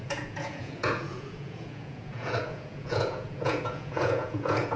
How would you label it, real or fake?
fake